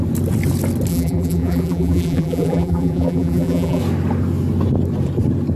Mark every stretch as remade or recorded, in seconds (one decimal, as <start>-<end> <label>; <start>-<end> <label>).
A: 0.0-0.9 recorded; 0.9-3.8 remade; 3.8-5.6 recorded